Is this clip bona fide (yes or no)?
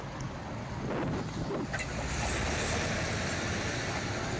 yes